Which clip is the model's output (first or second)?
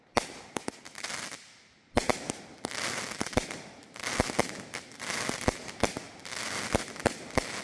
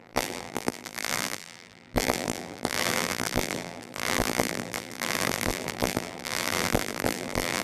second